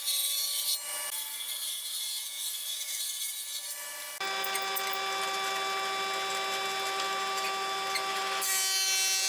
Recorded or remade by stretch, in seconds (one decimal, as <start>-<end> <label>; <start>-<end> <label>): 0.0-9.3 recorded